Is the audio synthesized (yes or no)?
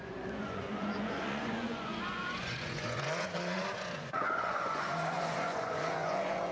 yes